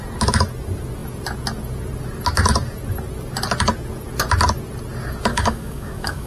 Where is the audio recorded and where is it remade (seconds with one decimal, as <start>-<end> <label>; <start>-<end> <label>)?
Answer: 0.0-5.3 recorded; 5.3-6.3 remade